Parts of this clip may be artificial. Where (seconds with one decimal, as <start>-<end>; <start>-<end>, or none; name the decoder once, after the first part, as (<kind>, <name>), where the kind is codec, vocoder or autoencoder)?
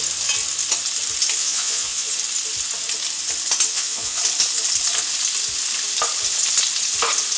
1.4-2.1 (vocoder, Vocos); 3.7-4.2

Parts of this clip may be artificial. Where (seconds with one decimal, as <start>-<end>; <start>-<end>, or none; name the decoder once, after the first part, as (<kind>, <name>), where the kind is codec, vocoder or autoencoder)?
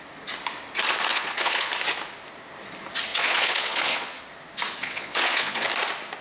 1.1-1.7 (vocoder, Vocos); 3.1-4.2; 4.8-5.7